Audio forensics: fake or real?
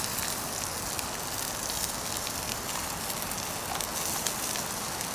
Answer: real